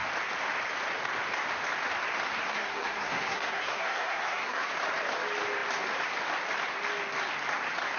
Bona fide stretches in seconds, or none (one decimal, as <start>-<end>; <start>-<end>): 0.0-2.5; 4.7-8.0

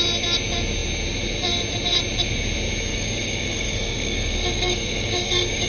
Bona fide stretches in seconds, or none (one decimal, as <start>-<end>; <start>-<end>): 0.0-2.9

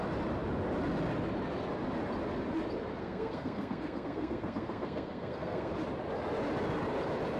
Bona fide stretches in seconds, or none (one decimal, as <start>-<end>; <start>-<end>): 0.0-3.0; 5.7-7.4

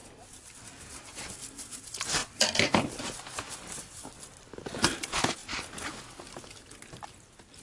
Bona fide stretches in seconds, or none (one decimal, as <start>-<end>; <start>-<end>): 0.0-2.2; 4.6-5.4; 6.2-7.6

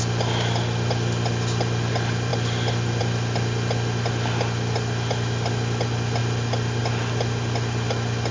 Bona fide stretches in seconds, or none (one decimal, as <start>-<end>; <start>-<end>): 0.0-8.3

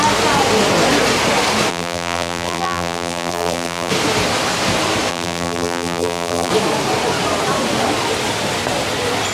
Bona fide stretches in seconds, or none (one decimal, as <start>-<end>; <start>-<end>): 0.0-1.7; 3.9-5.1; 6.5-9.3